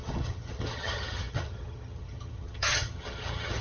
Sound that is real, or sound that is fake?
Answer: fake